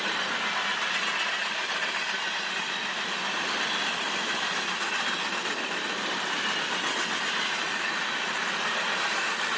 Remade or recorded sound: recorded